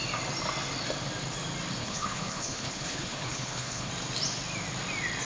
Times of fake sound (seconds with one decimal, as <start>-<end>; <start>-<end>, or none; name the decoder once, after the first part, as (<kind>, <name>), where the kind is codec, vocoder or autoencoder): 1.8-3.9 (codec, HILCodec)